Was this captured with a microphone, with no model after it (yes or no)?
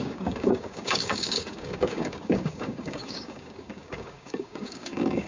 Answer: no